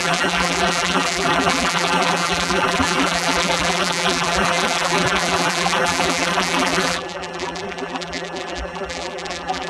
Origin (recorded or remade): remade